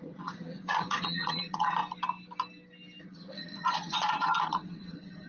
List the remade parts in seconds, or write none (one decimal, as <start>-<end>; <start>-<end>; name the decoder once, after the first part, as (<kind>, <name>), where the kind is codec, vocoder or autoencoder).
0.0-1.8 (vocoder, Vocos); 3.0-5.3